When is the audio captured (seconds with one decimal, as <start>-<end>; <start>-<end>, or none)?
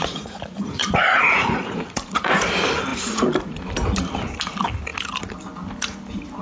2.4-6.4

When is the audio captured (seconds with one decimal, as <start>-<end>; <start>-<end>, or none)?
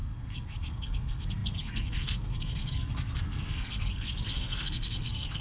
none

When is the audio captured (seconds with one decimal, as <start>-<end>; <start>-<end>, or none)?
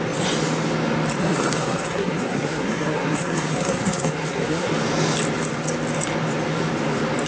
0.0-1.2; 4.7-7.3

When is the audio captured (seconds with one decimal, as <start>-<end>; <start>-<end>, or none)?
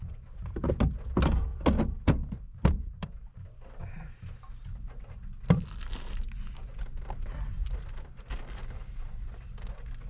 0.0-10.1